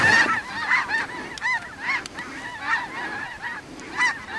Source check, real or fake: real